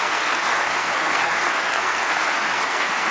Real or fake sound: fake